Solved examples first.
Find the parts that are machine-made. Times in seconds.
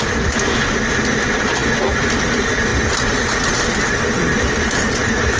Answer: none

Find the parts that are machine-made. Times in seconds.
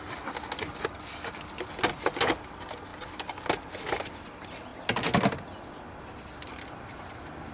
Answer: none